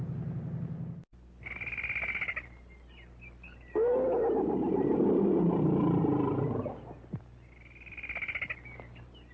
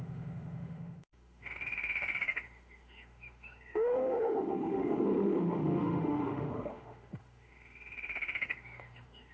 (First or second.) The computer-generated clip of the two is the second